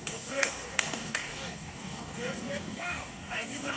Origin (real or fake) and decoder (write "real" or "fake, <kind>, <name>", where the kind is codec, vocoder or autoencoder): fake, codec, DAC